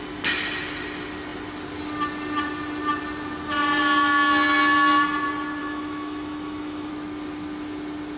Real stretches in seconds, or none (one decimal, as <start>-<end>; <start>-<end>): 0.0-5.6; 6.9-8.2